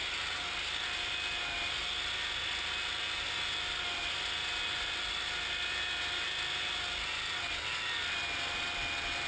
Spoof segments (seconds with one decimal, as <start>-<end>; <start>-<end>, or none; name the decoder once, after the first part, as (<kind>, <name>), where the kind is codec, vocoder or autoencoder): none